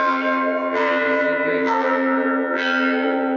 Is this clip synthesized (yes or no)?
yes